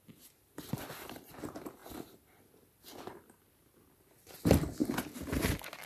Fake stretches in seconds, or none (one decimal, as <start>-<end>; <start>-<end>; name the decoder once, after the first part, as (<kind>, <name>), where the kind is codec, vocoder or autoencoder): none

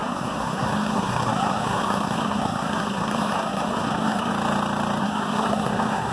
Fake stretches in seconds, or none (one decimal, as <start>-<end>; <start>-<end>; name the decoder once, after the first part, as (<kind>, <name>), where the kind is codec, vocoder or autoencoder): 0.0-4.3 (codec, SNAC); 5.0-6.1

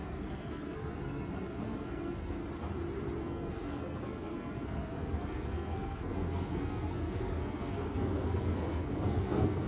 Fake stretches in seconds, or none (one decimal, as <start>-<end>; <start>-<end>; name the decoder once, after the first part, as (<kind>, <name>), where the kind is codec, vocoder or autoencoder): 0.0-2.4 (codec, SNAC); 3.2-9.7

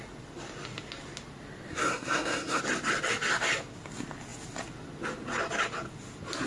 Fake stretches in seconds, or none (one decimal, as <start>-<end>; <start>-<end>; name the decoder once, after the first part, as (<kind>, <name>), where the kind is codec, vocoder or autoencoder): 1.7-2.6 (codec, SNAC)